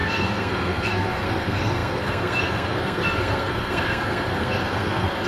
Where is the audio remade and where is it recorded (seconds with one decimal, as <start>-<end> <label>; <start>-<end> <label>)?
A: 0.0-5.3 remade